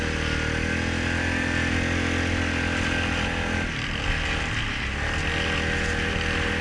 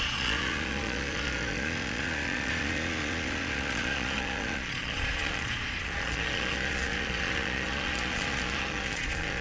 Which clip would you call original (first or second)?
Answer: first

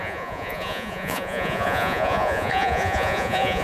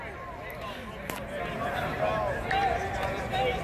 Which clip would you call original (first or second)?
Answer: second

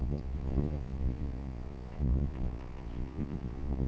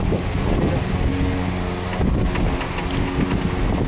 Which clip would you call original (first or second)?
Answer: second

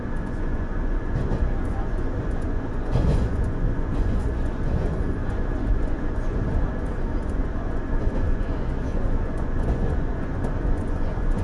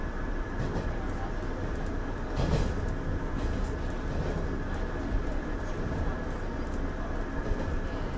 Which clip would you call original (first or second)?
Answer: second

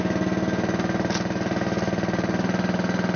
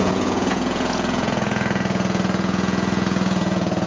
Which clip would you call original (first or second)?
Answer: first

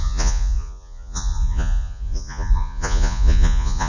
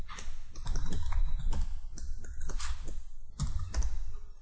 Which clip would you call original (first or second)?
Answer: second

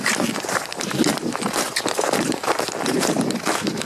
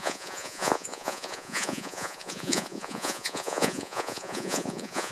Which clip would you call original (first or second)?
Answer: first